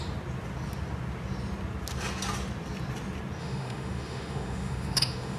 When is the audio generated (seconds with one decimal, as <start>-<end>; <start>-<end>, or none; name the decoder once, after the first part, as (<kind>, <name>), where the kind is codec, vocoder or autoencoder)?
3.4-5.4 (autoencoder, DAC-VAE)